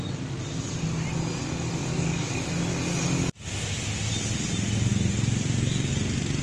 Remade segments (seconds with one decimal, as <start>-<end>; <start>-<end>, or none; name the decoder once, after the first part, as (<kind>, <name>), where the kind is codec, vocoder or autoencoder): 1.9-2.5 (codec, DAC)